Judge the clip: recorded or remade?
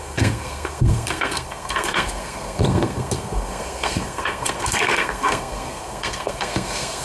remade